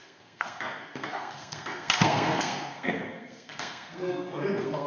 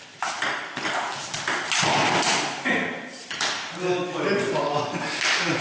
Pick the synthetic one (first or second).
first